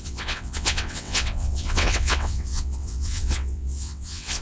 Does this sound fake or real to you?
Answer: fake